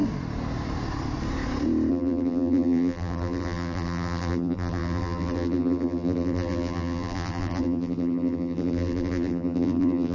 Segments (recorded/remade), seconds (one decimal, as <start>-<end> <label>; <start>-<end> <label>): 0.0-1.9 recorded; 1.9-10.1 remade